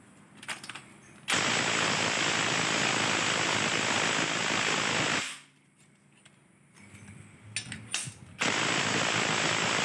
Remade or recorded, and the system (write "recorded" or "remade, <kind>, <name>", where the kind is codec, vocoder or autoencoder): recorded